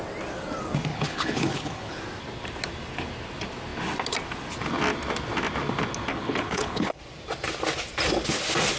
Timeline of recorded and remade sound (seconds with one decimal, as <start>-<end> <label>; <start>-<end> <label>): 0.0-0.9 recorded; 0.9-2.0 remade; 2.0-6.1 recorded; 6.1-7.0 remade; 7.0-8.8 recorded